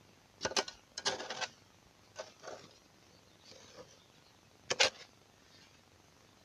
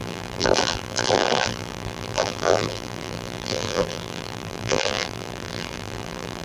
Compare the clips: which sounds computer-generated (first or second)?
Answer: second